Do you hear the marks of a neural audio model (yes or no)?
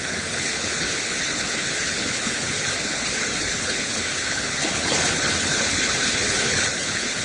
yes